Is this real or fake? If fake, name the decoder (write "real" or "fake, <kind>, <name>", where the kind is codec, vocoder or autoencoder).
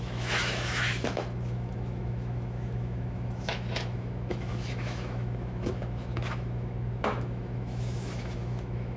fake, autoencoder, DAC-VAE